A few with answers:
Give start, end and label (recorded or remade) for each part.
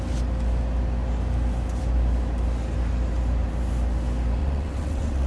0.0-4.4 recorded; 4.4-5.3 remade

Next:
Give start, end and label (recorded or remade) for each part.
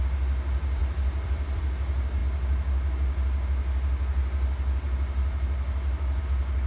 0.0-0.8 recorded; 0.8-1.6 remade; 1.6-6.7 recorded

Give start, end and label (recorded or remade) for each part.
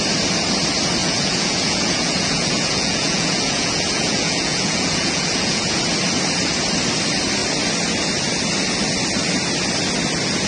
0.0-1.0 recorded; 1.0-5.8 remade; 5.8-10.5 recorded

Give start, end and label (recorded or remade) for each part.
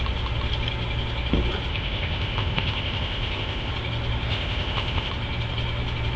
0.0-1.7 recorded; 1.7-3.7 remade; 3.7-4.3 recorded; 4.3-5.1 remade; 5.1-6.2 recorded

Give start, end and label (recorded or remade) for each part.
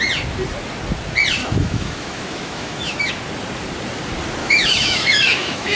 0.0-1.4 recorded; 1.4-3.1 remade; 3.1-4.4 recorded; 4.4-5.8 remade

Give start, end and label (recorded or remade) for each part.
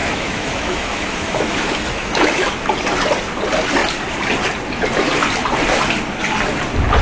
0.0-2.5 remade; 2.5-7.0 recorded